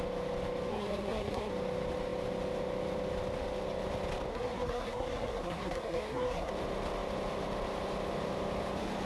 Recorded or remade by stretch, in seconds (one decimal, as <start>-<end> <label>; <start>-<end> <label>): 0.0-0.7 recorded; 0.7-1.5 remade; 1.5-4.3 recorded; 4.3-6.5 remade; 6.5-9.1 recorded